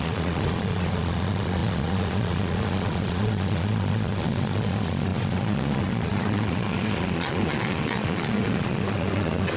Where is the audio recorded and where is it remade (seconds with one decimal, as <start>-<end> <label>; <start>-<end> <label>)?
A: 0.0-9.6 remade